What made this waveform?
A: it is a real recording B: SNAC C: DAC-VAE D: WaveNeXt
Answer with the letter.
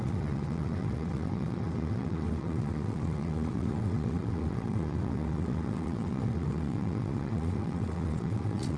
D